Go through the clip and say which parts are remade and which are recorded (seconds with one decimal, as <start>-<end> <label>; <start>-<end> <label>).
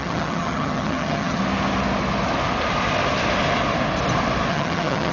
0.0-1.4 remade; 1.4-4.5 recorded; 4.5-5.1 remade